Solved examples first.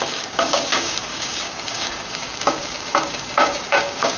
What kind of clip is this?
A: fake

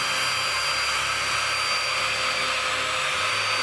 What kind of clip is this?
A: real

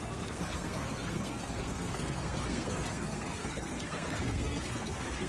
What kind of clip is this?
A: fake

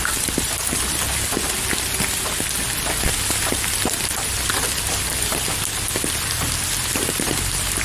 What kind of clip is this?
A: real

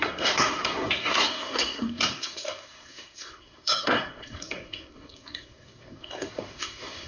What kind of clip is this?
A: fake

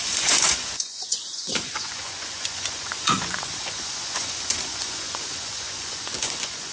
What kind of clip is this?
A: fake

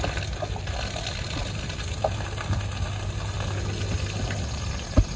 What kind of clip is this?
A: real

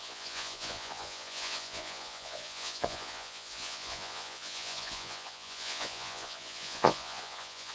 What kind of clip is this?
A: fake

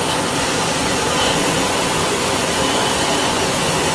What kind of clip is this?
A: fake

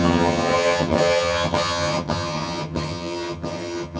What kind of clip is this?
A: fake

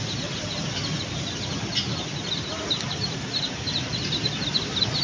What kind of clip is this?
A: real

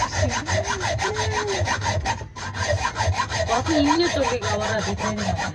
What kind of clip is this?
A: fake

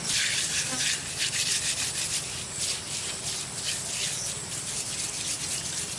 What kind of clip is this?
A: real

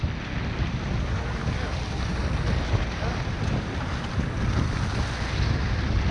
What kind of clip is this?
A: real